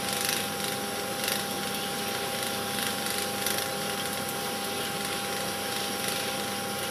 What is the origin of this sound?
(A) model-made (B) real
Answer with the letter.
B